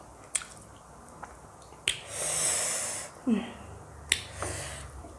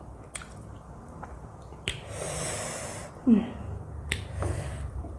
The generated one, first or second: second